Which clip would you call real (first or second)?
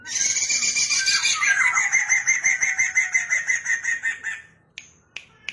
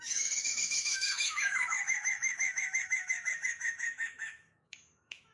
first